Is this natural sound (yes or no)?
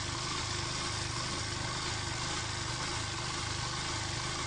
yes